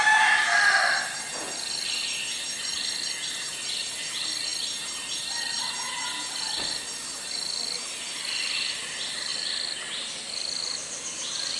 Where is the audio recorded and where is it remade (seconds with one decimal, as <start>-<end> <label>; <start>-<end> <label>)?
0.0-11.6 recorded